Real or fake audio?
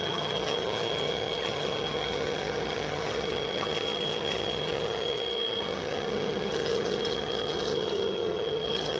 fake